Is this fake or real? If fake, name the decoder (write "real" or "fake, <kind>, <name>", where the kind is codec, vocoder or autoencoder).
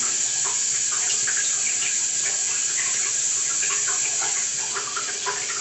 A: real